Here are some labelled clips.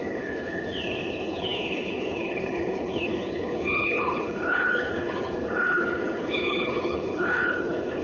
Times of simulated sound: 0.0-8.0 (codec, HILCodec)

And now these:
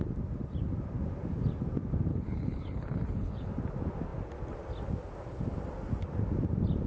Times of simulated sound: 2.1-3.5 (codec, HILCodec)

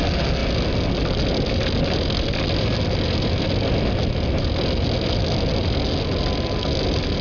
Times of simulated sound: none